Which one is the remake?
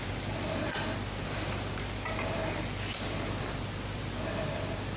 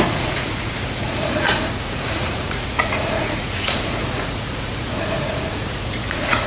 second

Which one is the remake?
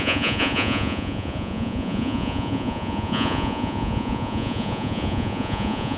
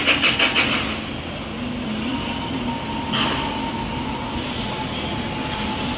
first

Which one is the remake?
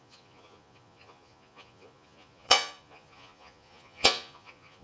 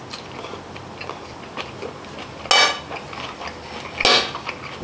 first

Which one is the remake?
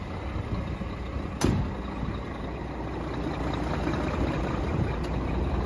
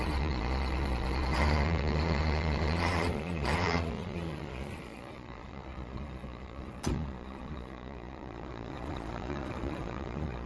second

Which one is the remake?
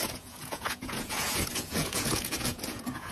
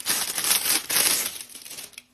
first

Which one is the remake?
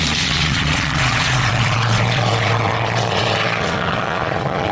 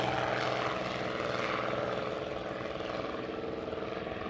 first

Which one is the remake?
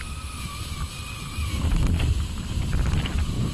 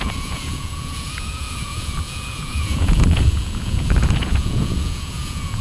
second